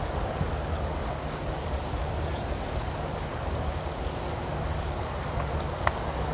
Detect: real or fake fake